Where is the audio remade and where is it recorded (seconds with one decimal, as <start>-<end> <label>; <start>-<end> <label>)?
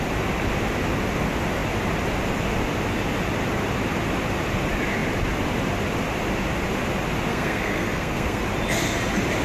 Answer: 0.0-7.3 recorded; 7.3-8.4 remade; 8.4-9.4 recorded